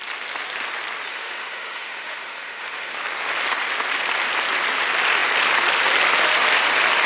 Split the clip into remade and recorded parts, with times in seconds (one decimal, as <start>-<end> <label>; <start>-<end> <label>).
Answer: 0.0-1.1 recorded; 1.1-2.9 remade; 2.9-7.1 recorded